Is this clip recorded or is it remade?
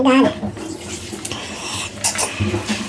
recorded